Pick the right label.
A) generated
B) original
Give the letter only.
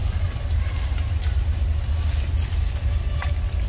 B